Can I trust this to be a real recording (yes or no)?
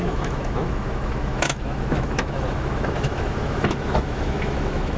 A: no